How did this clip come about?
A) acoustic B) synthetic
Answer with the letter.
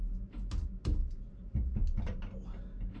A